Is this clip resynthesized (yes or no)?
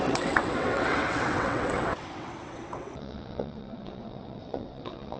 yes